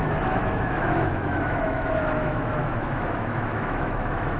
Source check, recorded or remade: remade